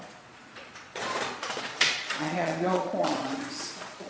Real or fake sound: fake